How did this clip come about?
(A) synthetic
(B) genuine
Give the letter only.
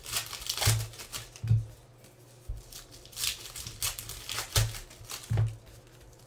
B